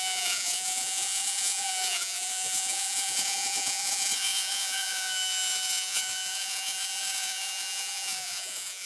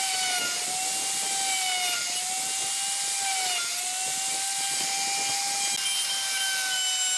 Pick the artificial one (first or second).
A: first